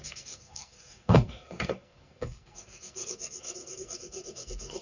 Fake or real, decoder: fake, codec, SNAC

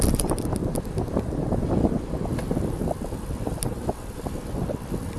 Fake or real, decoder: real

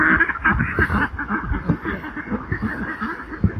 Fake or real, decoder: real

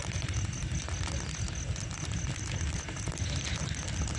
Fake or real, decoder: real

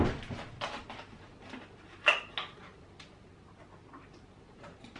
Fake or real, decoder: real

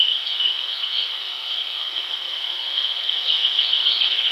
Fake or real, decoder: fake, codec, SNAC